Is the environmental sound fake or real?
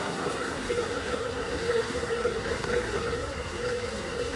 fake